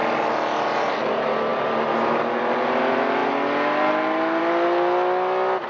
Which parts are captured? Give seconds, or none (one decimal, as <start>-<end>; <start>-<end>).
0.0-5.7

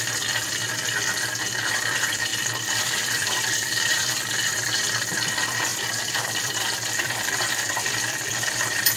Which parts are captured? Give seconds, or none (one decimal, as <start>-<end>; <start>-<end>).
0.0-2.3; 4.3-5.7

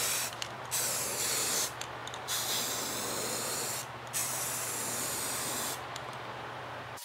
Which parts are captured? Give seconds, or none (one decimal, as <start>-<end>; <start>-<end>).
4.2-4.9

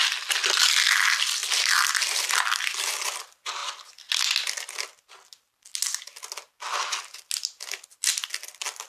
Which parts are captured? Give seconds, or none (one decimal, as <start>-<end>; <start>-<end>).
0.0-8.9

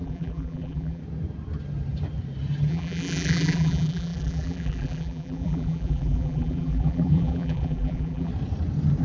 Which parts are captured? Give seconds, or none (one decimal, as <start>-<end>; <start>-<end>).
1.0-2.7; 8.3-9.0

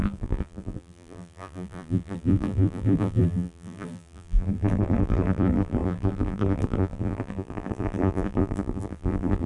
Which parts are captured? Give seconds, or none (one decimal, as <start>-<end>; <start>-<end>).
none

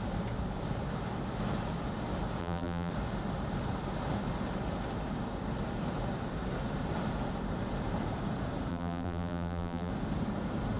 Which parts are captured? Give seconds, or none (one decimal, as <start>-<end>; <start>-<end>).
0.0-2.4; 2.9-8.7; 9.9-10.8